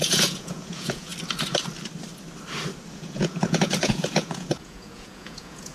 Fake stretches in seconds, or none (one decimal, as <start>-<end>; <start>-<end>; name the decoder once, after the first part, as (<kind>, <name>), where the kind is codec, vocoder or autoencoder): 0.0-1.1 (vocoder, Vocos); 2.9-5.7